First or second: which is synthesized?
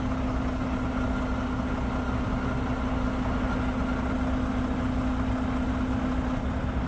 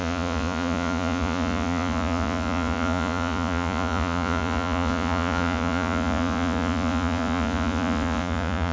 second